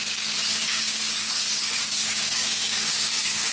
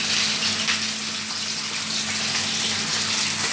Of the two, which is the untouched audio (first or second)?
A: second